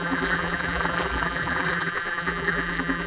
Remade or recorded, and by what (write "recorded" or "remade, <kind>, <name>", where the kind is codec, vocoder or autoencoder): remade, vocoder, BigVGAN v2